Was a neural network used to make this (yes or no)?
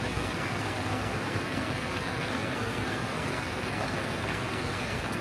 yes